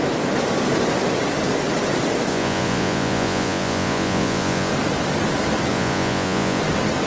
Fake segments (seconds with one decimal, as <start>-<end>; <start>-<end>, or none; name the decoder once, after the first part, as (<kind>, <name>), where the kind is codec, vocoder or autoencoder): 2.3-4.7 (vocoder, Vocos); 5.7-6.6